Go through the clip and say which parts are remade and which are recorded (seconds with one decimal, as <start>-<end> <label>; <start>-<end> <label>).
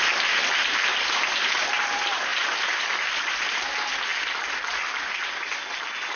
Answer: 0.0-2.3 recorded; 2.3-3.6 remade; 3.6-4.1 recorded; 4.1-5.2 remade; 5.2-6.2 recorded